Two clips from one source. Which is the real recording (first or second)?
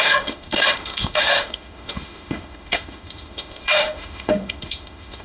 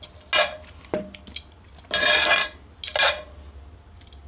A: second